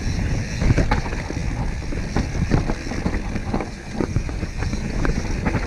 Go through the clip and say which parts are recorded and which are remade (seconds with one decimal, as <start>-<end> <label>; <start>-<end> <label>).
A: 0.0-3.4 recorded; 3.4-5.2 remade; 5.2-5.7 recorded